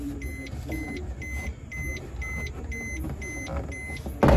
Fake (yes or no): no